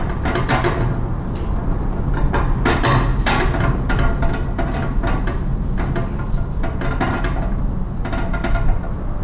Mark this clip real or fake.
real